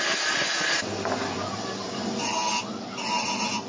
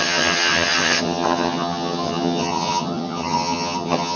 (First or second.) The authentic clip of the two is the first